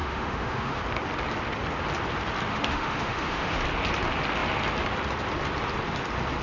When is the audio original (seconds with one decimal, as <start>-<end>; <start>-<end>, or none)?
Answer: 0.8-2.5; 3.6-6.4